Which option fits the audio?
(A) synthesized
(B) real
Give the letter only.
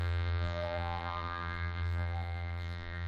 A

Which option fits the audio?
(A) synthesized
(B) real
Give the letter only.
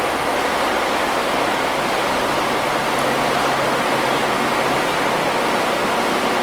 B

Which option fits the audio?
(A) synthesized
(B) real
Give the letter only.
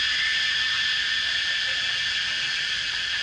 B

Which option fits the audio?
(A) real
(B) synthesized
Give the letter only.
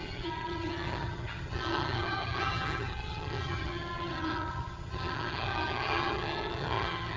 B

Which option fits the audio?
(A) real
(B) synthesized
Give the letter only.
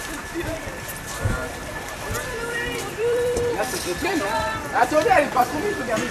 B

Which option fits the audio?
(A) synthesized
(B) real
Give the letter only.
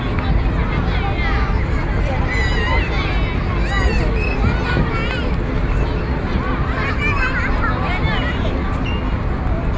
B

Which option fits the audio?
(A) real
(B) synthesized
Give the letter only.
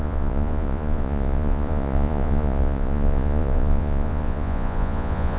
B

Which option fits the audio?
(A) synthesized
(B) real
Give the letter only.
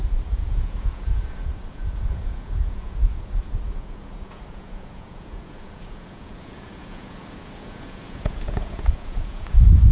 A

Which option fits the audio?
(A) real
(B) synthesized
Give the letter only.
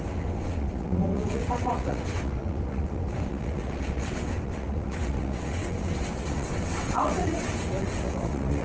B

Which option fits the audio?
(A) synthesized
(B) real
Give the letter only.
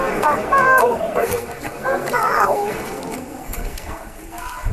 A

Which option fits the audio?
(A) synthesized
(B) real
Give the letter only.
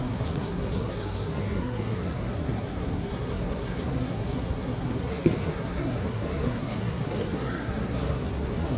A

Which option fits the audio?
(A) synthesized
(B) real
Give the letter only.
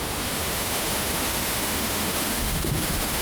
A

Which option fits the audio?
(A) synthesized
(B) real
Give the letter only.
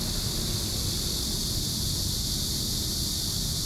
B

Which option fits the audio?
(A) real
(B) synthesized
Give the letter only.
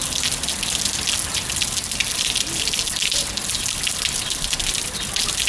A